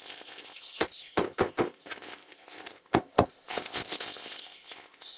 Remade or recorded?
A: remade